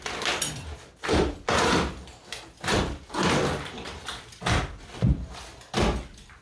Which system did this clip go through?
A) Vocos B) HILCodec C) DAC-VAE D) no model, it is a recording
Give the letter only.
D